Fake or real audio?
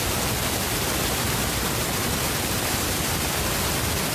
real